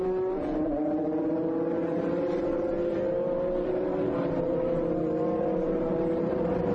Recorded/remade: remade